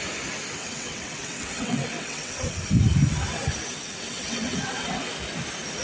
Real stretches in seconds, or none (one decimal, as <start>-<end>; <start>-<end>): 0.0-0.6; 2.6-3.8; 5.1-5.8